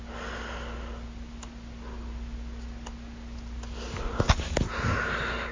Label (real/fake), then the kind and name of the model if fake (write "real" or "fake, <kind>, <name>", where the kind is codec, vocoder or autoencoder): real